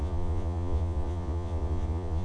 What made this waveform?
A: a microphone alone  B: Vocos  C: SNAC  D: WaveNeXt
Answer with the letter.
B